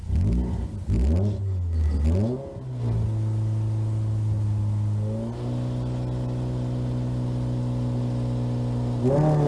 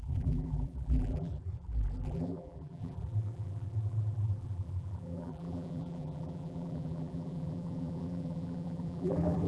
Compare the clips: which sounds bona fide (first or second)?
first